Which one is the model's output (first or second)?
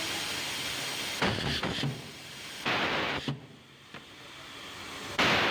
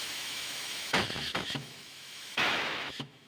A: second